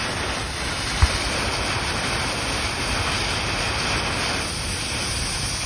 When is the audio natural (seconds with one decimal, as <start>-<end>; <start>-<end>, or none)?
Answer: 0.0-3.4